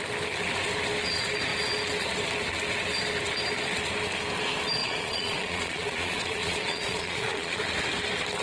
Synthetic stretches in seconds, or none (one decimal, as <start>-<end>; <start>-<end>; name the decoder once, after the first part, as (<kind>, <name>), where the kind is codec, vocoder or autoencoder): 4.8-7.6 (vocoder, Vocos)